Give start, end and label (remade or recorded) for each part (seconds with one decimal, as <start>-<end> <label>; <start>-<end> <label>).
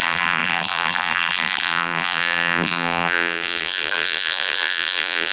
0.0-5.3 remade